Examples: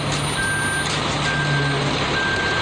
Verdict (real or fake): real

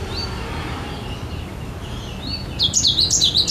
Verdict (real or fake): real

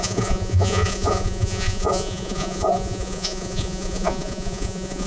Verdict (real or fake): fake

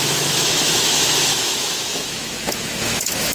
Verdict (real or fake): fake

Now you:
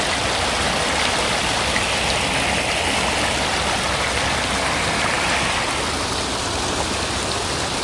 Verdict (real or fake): real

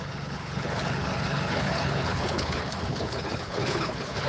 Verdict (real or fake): fake